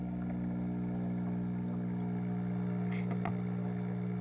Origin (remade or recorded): recorded